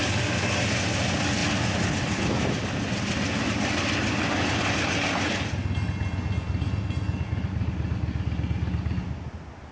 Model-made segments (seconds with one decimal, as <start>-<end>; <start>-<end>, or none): none